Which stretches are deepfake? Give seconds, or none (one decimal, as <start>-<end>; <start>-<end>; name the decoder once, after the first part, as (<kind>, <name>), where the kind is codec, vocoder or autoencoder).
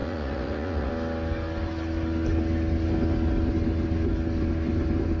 0.0-0.9 (vocoder, Vocos)